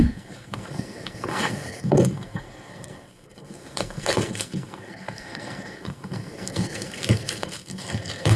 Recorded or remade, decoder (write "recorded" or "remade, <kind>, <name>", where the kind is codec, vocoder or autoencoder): remade, codec, SNAC